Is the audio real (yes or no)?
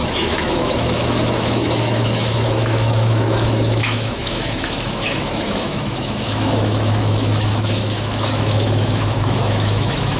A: no